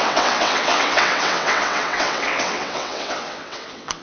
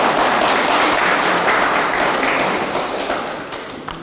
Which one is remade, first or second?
first